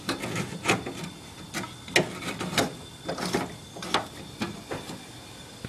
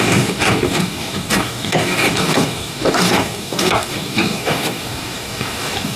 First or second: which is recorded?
first